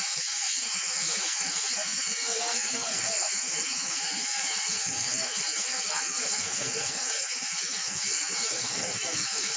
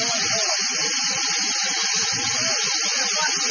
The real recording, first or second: second